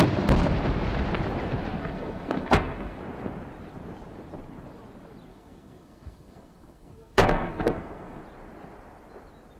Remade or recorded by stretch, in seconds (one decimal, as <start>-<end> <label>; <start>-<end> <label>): 0.0-1.8 recorded; 1.8-3.0 remade; 3.0-5.3 recorded; 5.3-8.2 remade; 8.2-9.6 recorded